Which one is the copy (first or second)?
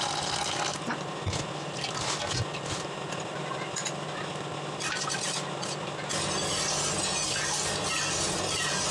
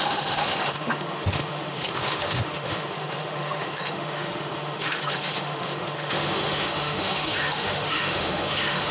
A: second